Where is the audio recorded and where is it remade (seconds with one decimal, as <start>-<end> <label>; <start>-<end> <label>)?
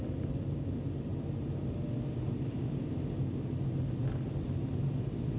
0.0-5.4 recorded